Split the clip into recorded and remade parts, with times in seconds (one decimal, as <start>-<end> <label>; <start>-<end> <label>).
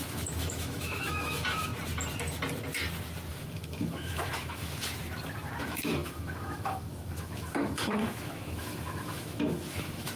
0.0-1.7 remade; 1.7-3.3 recorded; 3.3-4.9 remade; 4.9-5.6 recorded; 5.6-10.2 remade